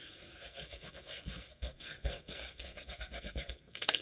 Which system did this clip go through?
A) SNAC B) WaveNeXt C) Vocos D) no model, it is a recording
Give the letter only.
A